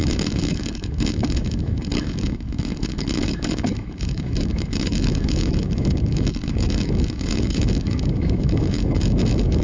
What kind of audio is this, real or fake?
fake